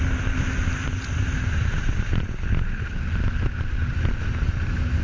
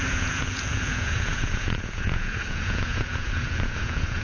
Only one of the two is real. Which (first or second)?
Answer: first